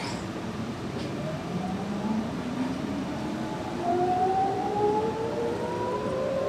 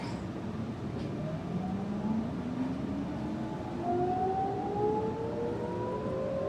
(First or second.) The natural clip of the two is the second